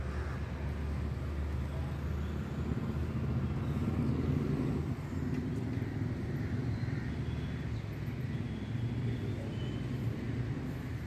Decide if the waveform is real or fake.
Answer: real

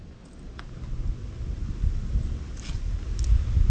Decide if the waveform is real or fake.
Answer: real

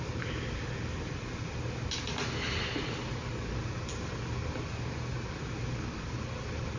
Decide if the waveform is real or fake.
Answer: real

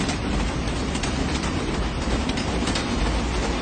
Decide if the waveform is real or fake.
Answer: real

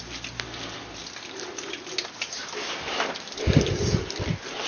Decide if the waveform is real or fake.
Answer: real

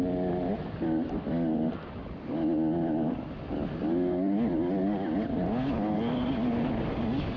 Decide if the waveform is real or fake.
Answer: real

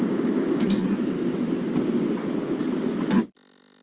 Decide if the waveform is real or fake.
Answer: real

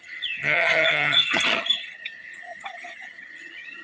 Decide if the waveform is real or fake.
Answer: fake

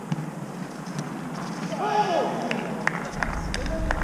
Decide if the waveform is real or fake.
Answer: real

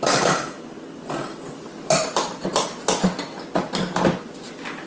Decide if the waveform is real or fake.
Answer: real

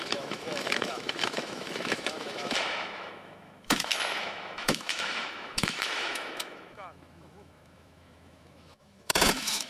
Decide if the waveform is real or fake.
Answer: fake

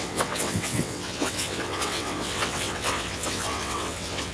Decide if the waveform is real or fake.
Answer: fake